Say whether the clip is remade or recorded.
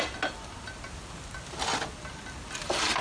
recorded